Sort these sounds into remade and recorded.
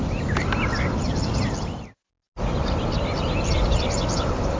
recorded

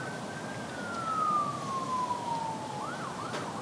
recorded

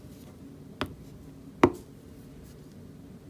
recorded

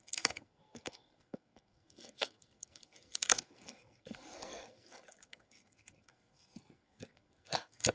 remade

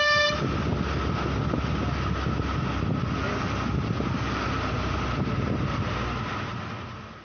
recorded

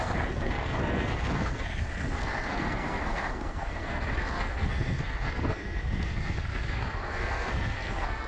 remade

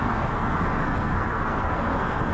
remade